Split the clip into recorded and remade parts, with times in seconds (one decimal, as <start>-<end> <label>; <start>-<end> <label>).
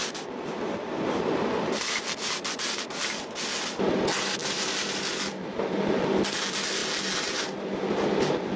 0.0-3.0 remade; 3.0-4.4 recorded; 4.4-5.1 remade; 5.1-8.6 recorded